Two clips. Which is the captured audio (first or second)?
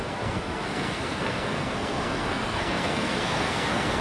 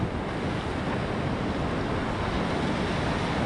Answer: second